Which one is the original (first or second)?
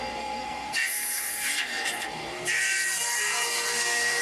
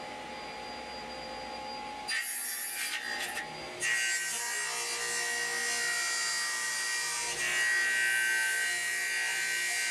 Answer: second